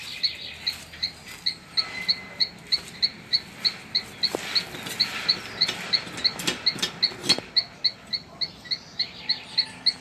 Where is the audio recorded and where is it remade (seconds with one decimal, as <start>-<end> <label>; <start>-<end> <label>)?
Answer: 0.0-10.0 recorded